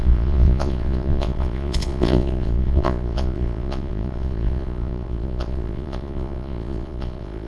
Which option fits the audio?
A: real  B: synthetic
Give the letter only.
B